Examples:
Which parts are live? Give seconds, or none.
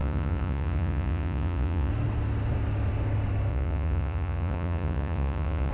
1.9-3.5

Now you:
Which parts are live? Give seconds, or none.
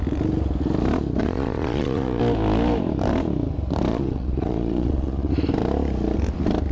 0.0-1.2; 2.2-3.9; 5.3-6.7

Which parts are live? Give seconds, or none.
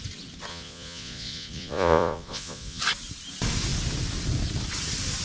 0.0-0.5; 2.8-5.2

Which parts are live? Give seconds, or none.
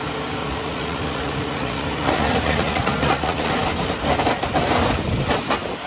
0.0-0.4; 3.5-5.9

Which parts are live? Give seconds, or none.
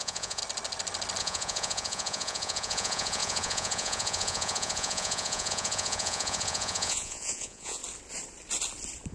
0.4-1.2; 7.8-9.1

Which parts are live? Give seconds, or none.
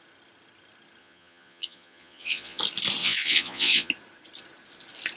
0.0-1.0; 2.6-3.0; 3.9-5.2